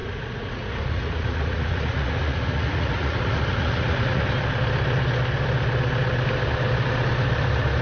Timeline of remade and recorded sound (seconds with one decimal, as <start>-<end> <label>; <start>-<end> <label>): 0.0-4.2 remade; 4.2-7.8 recorded